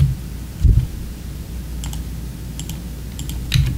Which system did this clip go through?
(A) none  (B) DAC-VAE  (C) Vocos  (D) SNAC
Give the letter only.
A